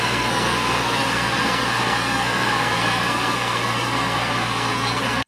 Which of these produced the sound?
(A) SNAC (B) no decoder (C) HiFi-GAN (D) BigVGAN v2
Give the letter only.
A